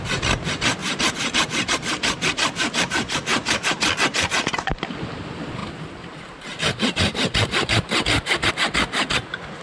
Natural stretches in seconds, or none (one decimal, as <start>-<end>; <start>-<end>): 0.0-0.8; 1.7-3.3; 3.8-5.6; 8.5-9.6